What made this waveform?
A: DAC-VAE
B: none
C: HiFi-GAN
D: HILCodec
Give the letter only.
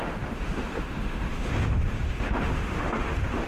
A